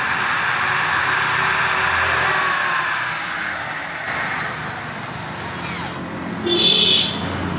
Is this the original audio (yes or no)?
yes